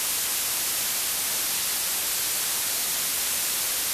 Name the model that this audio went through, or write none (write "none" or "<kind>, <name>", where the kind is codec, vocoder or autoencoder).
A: none